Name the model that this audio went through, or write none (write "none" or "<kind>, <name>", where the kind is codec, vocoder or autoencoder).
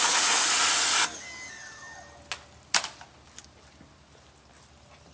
none